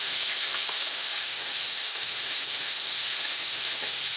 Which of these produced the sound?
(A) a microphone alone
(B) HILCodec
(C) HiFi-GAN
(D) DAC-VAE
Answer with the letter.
D